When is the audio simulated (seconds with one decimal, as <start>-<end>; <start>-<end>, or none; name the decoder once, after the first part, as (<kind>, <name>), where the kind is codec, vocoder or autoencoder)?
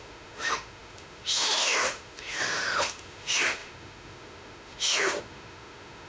0.0-6.1 (autoencoder, DAC-VAE)